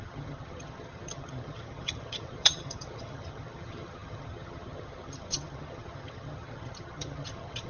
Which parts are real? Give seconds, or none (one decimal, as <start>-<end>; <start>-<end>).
none